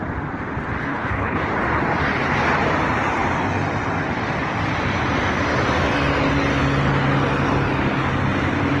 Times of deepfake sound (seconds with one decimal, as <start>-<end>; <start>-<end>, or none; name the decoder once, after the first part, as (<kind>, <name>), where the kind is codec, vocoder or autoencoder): 0.9-1.4 (codec, HILCodec)